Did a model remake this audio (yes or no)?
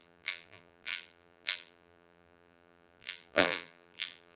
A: yes